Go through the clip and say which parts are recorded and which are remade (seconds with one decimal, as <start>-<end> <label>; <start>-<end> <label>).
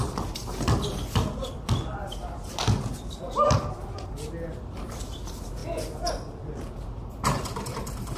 0.0-8.2 recorded